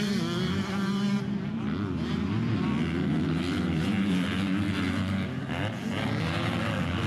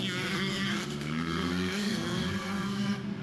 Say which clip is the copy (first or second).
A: second